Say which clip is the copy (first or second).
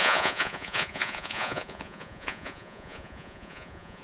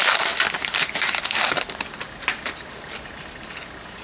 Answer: first